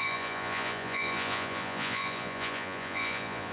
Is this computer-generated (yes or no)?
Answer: yes